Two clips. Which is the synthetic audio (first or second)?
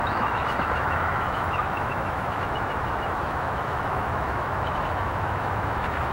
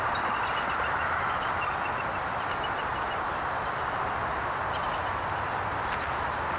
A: first